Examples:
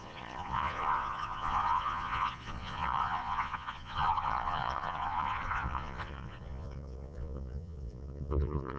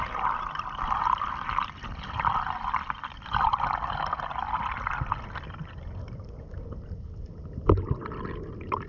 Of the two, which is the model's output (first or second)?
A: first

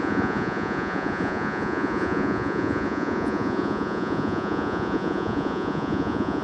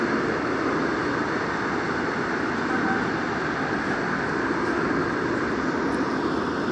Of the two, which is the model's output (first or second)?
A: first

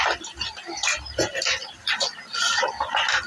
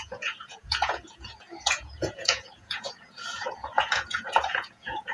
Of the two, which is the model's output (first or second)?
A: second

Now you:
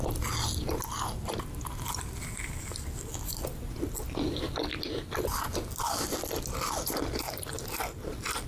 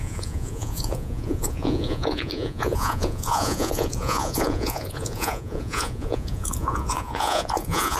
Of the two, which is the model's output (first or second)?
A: second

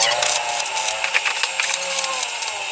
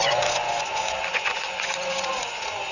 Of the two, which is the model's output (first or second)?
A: second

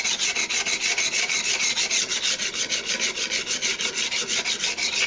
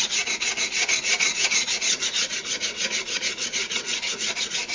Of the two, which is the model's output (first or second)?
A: second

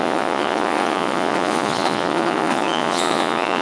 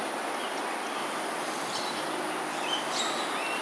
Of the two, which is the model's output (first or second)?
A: first